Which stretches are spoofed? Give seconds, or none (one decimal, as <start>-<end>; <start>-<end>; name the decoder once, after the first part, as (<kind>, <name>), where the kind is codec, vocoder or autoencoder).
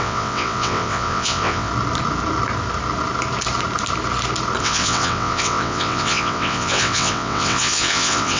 0.0-1.7 (vocoder, WaveNeXt); 4.6-8.4